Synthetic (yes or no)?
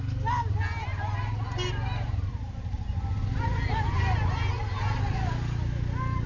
no